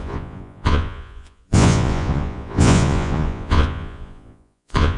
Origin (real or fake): fake